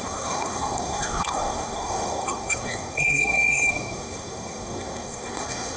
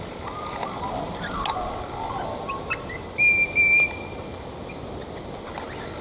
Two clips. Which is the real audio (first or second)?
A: second